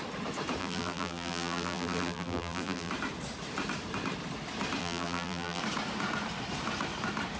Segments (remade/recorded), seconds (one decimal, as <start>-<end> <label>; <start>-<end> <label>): 0.0-0.6 recorded; 0.6-2.9 remade; 2.9-4.8 recorded; 4.8-5.6 remade; 5.6-7.4 recorded